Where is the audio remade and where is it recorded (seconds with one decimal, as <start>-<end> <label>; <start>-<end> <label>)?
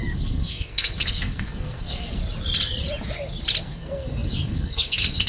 0.0-2.2 remade; 2.2-3.6 recorded; 3.6-5.3 remade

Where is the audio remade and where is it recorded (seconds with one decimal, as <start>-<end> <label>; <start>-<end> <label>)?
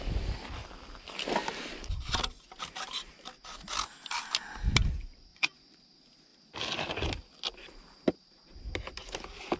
0.0-5.3 recorded; 5.3-5.8 remade; 5.8-9.6 recorded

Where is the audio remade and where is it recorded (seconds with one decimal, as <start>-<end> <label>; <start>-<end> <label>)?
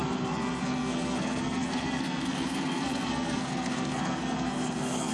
0.0-5.1 remade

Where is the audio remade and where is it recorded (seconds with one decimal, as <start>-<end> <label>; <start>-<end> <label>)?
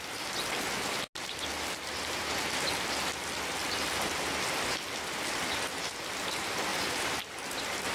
0.0-3.6 recorded; 3.6-5.3 remade; 5.3-7.9 recorded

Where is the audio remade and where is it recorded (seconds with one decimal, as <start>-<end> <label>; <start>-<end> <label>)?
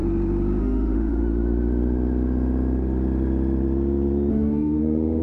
0.0-0.6 recorded; 0.6-1.2 remade; 1.2-4.3 recorded; 4.3-5.2 remade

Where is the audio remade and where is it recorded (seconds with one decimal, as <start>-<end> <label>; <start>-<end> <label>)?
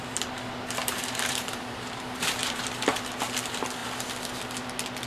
0.0-0.8 recorded; 0.8-2.6 remade; 2.6-5.1 recorded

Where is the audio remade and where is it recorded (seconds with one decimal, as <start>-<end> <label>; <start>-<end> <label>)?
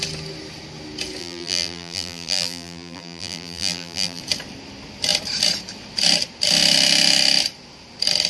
0.0-1.2 recorded; 1.2-4.2 remade; 4.2-8.3 recorded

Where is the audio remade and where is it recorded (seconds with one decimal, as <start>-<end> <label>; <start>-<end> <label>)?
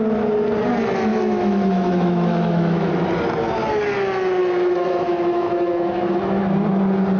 0.0-1.1 recorded; 1.1-2.9 remade; 2.9-4.4 recorded; 4.4-6.4 remade; 6.4-7.2 recorded